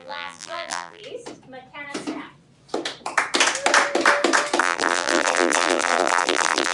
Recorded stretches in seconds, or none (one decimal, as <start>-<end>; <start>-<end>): 1.0-4.6